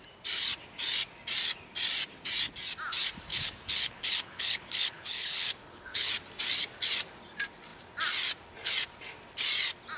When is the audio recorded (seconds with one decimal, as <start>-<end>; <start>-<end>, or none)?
0.0-3.3; 6.1-10.0